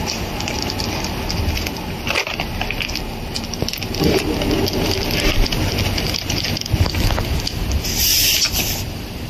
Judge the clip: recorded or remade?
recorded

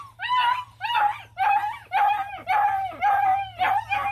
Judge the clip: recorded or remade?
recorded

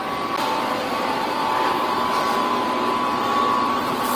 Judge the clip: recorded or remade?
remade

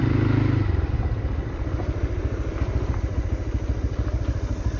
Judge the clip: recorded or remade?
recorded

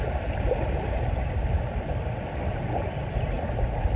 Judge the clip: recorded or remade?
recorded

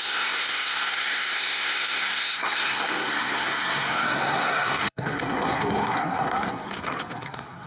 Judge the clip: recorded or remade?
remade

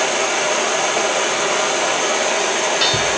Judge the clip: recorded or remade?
recorded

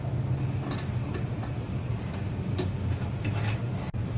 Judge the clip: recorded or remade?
recorded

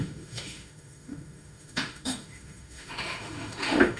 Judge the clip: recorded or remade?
remade